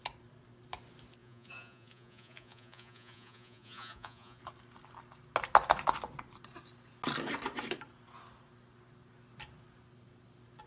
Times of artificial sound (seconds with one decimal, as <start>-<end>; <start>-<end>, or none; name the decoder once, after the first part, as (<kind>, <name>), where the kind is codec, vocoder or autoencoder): 1.2-4.4 (vocoder, Vocos)